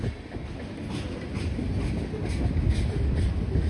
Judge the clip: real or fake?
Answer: real